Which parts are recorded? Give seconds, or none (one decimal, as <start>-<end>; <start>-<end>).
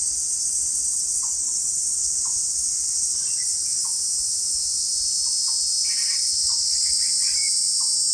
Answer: 2.0-2.5; 3.8-5.8; 7.4-8.1